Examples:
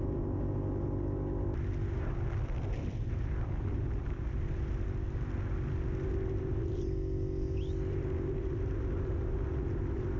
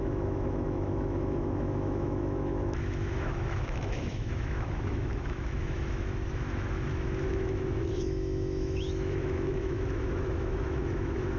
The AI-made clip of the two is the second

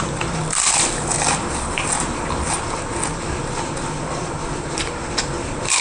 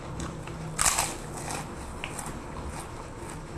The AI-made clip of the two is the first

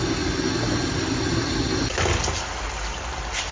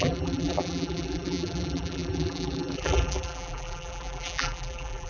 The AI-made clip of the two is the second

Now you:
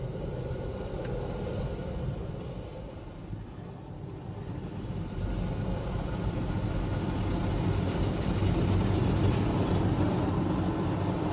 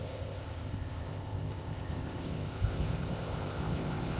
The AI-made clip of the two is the second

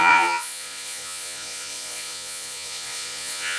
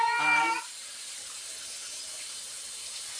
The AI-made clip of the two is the first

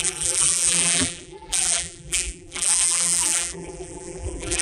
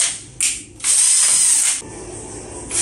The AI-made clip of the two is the first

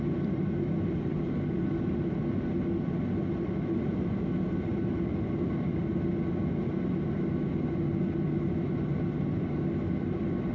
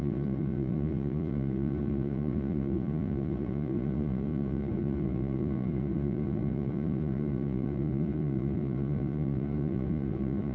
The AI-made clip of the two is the second